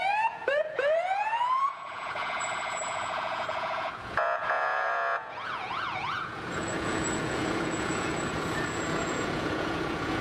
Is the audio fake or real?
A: fake